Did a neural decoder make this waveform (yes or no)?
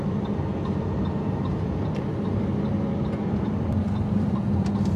no